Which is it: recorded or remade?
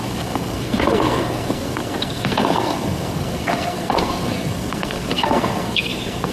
remade